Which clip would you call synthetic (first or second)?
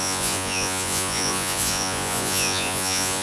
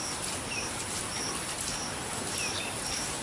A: first